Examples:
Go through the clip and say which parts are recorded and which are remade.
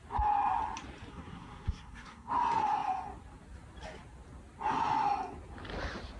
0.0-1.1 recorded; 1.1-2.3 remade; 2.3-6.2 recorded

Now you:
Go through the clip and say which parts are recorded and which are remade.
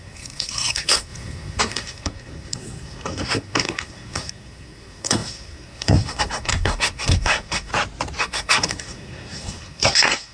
0.0-7.7 remade; 7.7-8.2 recorded; 8.2-10.3 remade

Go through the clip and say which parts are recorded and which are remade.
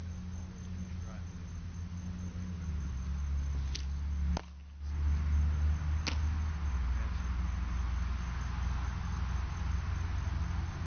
0.0-10.9 recorded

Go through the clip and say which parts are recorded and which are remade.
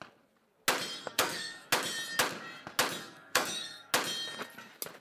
0.0-1.0 recorded; 1.0-1.7 remade; 1.7-3.0 recorded; 3.0-3.9 remade; 3.9-5.0 recorded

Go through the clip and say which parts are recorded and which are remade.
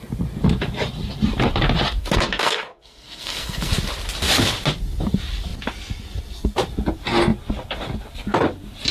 0.0-2.0 recorded; 2.0-3.7 remade; 3.7-8.9 recorded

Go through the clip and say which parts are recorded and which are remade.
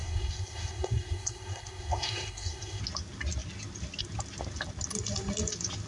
0.0-2.8 remade; 2.8-5.9 recorded